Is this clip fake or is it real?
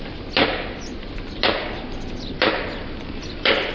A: real